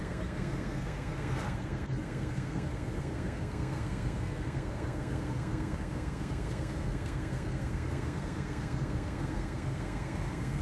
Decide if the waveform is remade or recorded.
remade